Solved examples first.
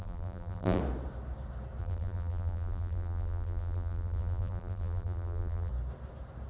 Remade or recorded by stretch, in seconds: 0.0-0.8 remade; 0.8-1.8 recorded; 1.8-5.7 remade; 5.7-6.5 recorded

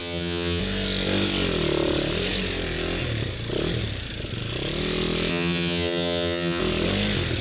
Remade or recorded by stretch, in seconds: 0.0-0.6 remade; 0.6-5.3 recorded; 5.3-6.6 remade; 6.6-7.4 recorded